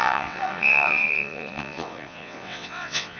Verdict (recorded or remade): remade